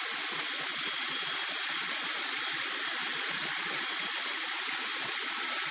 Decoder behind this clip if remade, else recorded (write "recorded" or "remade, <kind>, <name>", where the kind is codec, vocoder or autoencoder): recorded